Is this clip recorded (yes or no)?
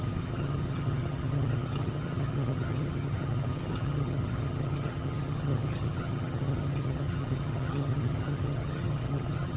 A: no